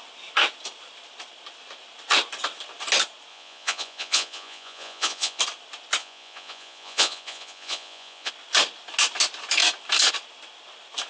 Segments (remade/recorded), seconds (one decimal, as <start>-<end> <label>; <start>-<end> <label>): 0.0-3.3 recorded; 3.3-5.4 remade; 5.4-6.0 recorded; 6.0-8.3 remade; 8.3-11.1 recorded